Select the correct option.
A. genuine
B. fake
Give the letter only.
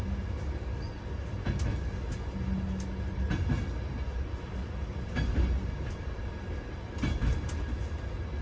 A